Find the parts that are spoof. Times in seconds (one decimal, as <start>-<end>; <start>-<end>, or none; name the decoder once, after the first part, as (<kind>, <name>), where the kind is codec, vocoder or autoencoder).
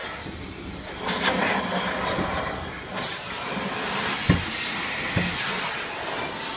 none